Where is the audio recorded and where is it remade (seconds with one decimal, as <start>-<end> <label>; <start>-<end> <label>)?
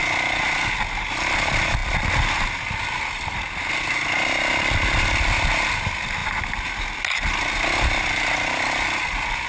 0.0-9.5 recorded